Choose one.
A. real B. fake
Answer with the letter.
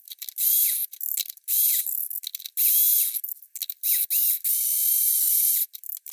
A